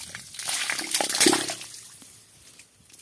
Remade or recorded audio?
recorded